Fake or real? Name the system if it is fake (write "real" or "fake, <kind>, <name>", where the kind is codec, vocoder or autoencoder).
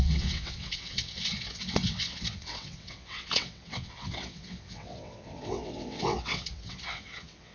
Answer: fake, vocoder, WaveNeXt